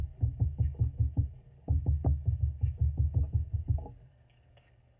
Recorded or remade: remade